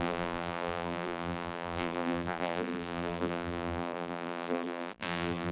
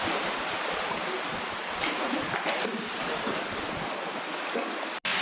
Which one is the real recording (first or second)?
second